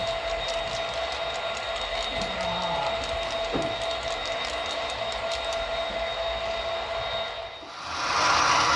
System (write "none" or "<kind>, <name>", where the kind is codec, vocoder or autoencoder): none